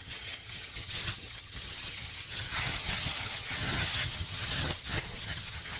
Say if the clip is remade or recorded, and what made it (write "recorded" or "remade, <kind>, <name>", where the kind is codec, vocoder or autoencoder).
remade, vocoder, HiFi-GAN